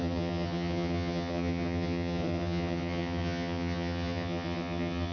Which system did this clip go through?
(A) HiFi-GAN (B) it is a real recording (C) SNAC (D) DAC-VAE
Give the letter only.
A